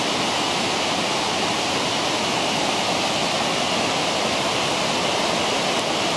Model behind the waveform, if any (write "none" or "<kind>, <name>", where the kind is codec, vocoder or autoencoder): none